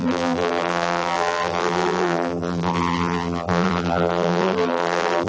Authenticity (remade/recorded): remade